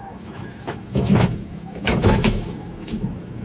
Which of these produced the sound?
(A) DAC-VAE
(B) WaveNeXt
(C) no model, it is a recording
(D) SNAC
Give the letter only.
A